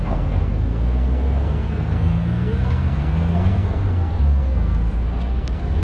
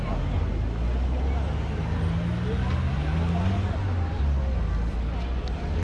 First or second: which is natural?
second